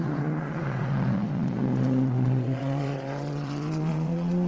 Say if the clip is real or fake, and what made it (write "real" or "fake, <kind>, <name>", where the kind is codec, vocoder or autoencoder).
fake, vocoder, Vocos